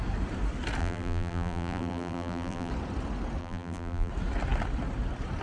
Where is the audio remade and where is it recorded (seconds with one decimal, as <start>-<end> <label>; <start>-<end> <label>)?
0.0-0.8 recorded; 0.8-2.7 remade; 2.7-3.4 recorded; 3.4-4.1 remade; 4.1-5.4 recorded